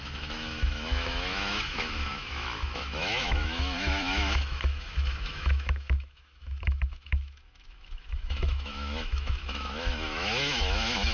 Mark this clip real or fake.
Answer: fake